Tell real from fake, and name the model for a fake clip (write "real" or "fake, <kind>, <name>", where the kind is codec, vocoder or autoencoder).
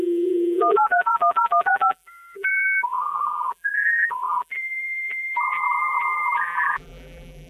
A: fake, vocoder, BigVGAN v2